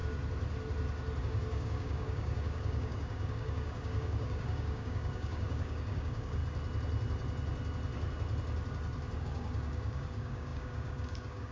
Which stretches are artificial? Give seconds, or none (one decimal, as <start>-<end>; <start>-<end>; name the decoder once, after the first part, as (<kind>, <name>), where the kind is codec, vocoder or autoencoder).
1.2-6.4 (codec, DAC); 9.2-11.5